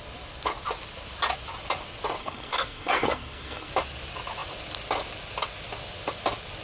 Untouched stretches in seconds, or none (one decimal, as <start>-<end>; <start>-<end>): 0.0-2.2; 3.7-6.6